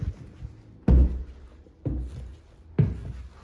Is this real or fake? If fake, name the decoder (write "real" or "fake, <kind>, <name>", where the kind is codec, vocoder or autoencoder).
real